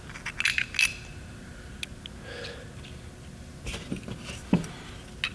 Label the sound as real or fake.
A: real